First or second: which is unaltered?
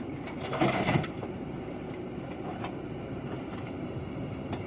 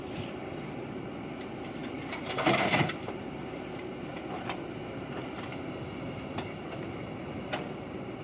second